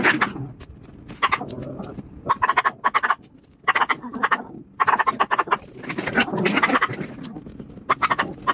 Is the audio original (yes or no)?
yes